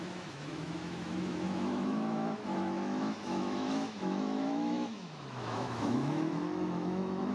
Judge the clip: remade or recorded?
remade